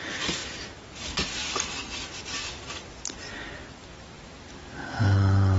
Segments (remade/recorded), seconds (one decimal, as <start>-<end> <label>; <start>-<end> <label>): 0.0-0.4 remade; 0.4-3.8 recorded; 3.8-5.6 remade